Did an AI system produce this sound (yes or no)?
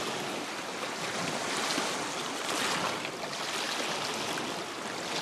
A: no